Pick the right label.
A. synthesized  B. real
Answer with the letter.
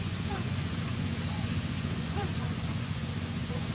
A